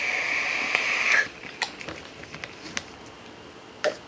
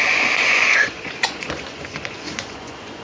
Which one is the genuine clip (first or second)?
first